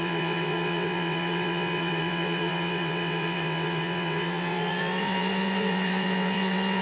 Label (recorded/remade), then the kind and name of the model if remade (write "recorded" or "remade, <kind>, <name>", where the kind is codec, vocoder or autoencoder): remade, vocoder, WaveNeXt